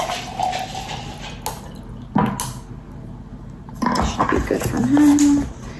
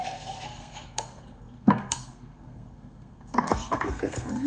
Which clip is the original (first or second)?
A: first